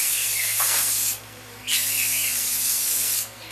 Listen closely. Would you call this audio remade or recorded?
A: remade